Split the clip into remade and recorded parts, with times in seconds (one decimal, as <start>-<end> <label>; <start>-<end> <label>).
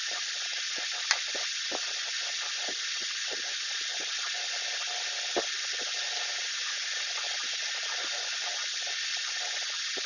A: 0.0-10.1 recorded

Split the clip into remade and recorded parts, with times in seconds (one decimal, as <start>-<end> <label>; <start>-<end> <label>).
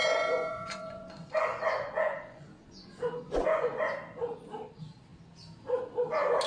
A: 0.0-3.9 remade; 3.9-6.5 recorded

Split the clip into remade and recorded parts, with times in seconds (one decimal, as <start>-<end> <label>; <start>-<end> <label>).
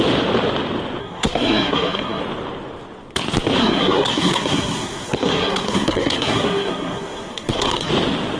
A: 0.0-1.0 recorded; 1.0-2.2 remade; 2.2-3.6 recorded; 3.6-7.9 remade; 7.9-8.4 recorded